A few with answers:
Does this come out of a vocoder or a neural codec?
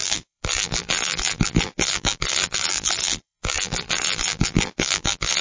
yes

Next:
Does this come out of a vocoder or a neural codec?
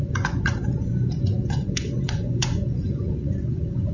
yes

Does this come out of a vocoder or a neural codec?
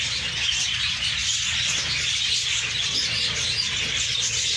no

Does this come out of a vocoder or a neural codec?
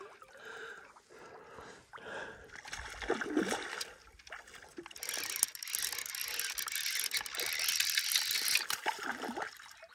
no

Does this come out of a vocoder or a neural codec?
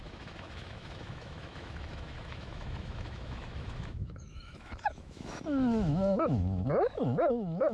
yes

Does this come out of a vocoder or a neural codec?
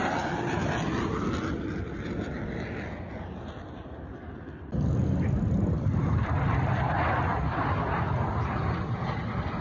yes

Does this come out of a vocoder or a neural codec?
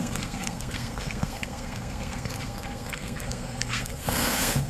yes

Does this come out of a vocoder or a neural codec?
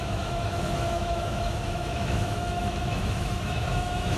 yes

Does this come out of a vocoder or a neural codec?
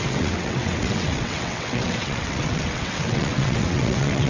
yes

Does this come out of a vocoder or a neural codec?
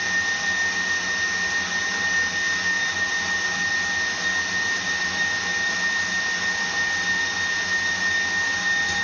no